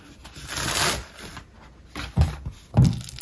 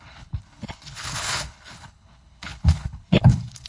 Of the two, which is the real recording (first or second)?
first